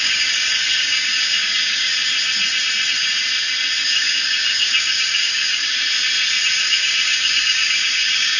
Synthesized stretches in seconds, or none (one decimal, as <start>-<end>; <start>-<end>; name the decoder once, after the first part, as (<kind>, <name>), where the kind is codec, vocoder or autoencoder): 0.0-1.9 (codec, DAC); 3.8-5.7; 6.6-8.4